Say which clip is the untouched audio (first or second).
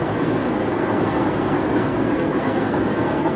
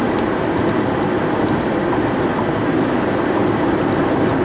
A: second